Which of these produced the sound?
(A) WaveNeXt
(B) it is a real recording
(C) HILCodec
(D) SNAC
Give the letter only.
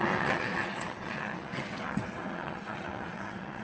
A